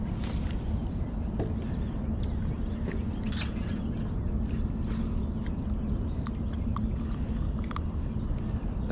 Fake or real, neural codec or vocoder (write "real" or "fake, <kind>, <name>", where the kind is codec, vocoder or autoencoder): real